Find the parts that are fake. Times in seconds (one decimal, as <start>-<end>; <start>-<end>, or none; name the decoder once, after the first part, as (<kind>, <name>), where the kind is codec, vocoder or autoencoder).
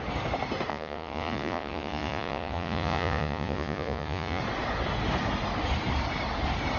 0.7-4.4 (vocoder, Vocos)